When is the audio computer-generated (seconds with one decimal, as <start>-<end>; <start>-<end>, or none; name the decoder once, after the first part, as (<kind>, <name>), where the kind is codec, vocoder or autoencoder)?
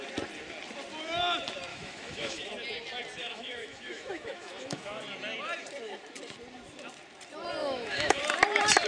1.7-2.5 (autoencoder, DAC-VAE); 3.2-5.0; 7.6-8.2